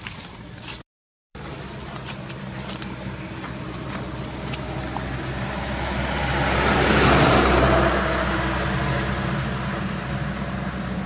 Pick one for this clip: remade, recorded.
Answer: remade